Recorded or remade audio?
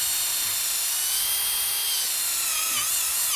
recorded